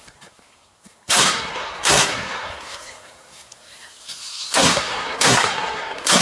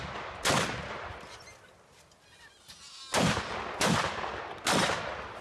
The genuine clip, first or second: second